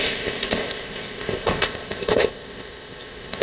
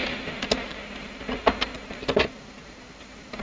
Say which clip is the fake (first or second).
first